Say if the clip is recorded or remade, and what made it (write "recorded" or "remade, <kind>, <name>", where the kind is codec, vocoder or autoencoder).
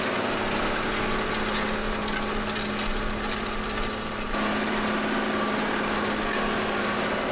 recorded